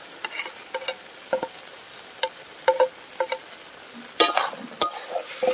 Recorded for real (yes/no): yes